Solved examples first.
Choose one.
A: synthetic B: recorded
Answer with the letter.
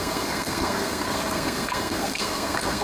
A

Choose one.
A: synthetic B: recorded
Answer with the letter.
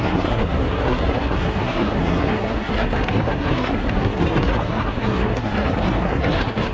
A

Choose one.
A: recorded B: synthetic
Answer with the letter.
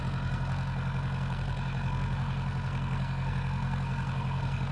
B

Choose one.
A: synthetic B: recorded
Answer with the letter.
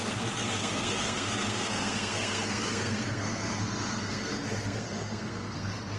A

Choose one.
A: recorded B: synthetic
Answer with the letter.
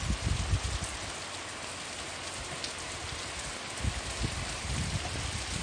A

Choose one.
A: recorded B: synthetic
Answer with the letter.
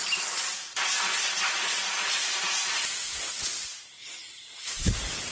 A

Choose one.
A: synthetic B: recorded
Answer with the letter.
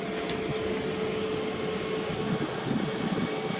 B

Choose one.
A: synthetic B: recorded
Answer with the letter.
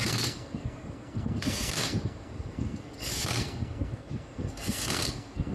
A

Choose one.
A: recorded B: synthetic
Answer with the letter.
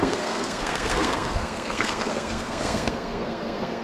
B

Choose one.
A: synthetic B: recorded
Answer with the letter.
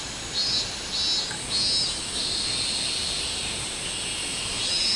B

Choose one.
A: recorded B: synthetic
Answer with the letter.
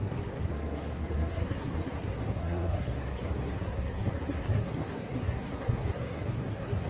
B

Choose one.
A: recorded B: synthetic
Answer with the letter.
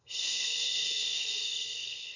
B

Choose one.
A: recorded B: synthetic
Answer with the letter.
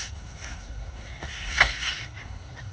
B